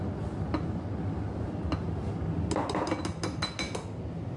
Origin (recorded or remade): recorded